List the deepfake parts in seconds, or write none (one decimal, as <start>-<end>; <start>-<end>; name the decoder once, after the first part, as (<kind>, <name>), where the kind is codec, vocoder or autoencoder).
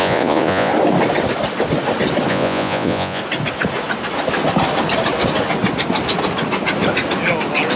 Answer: 0.0-0.7 (vocoder, Vocos); 2.3-3.2